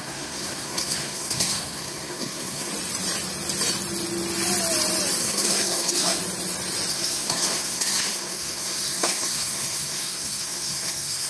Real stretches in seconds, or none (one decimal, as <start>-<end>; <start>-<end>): 2.7-5.2; 6.2-6.9